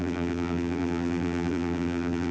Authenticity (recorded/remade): remade